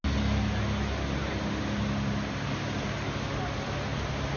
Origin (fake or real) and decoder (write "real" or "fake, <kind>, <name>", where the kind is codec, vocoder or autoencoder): real